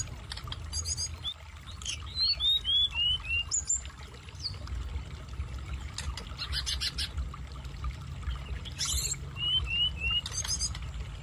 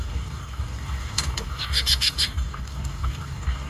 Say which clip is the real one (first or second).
first